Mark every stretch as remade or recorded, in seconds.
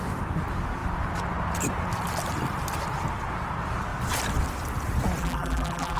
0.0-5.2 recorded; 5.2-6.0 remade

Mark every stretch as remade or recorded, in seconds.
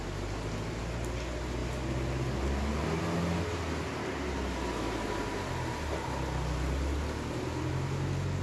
0.0-8.4 recorded